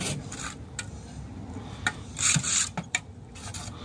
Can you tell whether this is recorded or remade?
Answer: recorded